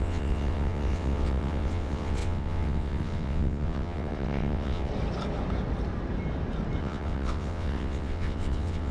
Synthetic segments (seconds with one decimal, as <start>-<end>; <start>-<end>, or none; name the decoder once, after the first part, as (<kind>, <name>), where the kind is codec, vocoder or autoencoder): 0.0-4.9 (vocoder, WaveNeXt); 6.8-8.9